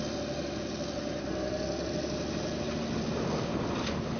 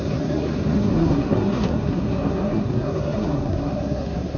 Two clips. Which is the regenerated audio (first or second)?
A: second